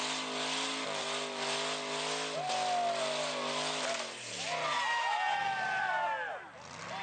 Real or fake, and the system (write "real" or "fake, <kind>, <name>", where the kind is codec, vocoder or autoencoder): real